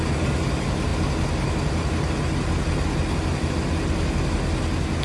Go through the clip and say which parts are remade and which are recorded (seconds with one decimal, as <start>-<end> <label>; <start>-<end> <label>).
0.0-5.0 recorded